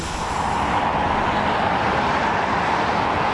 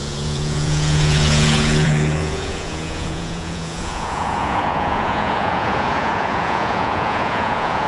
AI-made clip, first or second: second